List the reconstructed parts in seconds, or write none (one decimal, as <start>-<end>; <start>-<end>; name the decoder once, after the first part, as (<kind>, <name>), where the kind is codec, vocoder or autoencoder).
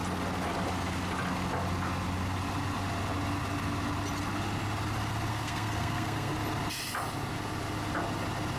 5.3-6.3 (codec, SNAC)